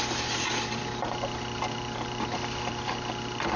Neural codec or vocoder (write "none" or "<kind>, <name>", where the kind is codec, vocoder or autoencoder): none